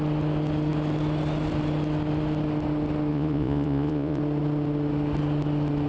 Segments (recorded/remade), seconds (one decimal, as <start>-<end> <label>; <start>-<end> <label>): 0.0-3.1 recorded; 3.1-4.2 remade; 4.2-5.9 recorded